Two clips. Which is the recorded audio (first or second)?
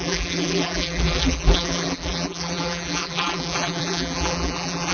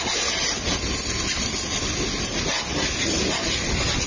second